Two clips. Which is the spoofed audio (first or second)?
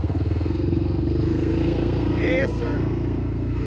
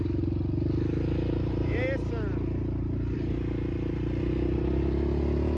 first